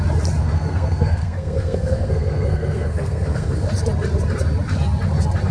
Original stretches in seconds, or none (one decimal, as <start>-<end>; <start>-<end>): 0.0-0.4; 3.7-5.5